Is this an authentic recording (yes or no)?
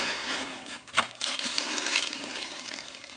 no